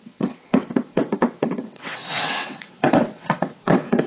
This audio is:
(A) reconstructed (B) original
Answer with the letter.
A